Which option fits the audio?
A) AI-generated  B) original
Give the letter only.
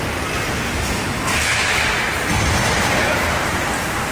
B